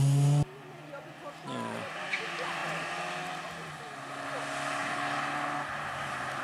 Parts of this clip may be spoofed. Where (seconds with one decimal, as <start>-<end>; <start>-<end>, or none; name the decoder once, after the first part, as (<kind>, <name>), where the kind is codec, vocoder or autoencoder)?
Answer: none

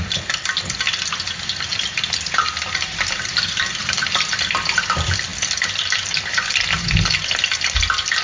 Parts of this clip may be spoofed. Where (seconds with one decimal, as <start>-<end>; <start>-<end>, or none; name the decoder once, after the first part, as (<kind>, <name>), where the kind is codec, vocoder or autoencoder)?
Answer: 1.7-3.7 (vocoder, BigVGAN v2)

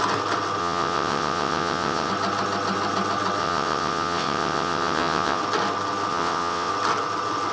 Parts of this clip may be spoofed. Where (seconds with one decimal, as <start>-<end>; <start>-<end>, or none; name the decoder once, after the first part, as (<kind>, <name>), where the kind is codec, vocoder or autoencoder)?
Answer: 0.6-2.1 (vocoder, WaveNeXt); 3.4-5.4; 6.1-6.7

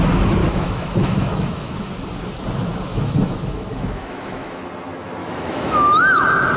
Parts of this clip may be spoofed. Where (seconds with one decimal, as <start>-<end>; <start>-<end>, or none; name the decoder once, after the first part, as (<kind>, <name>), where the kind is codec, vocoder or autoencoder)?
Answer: 0.4-1.9 (autoencoder, DAC-VAE); 2.9-4.6; 5.2-6.0

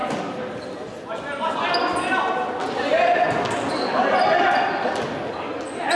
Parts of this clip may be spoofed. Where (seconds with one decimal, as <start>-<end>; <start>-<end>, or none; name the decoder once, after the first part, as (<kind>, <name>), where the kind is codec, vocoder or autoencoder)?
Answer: none

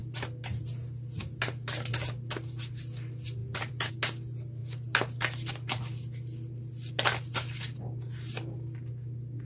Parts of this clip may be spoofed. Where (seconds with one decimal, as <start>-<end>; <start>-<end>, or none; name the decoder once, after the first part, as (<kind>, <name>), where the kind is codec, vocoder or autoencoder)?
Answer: 3.4-3.9 (vocoder, BigVGAN v2)